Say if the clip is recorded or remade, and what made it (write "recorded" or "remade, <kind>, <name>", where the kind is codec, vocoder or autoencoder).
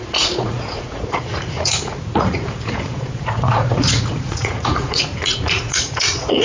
remade, vocoder, Vocos